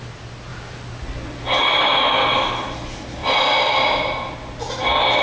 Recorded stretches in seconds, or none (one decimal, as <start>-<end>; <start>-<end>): 0.0-5.2